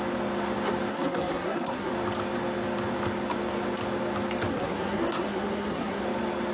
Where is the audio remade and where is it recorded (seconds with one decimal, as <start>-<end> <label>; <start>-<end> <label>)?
0.0-0.9 recorded; 0.9-1.9 remade; 1.9-4.5 recorded; 4.5-6.0 remade; 6.0-6.5 recorded